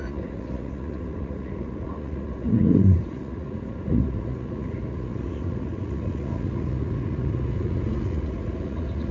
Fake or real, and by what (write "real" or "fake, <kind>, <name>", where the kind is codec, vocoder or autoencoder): fake, vocoder, Vocos